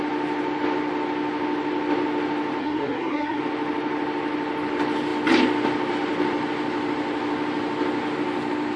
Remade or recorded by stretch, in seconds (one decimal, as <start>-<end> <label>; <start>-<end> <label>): 0.0-2.6 recorded; 2.6-3.4 remade; 3.4-8.8 recorded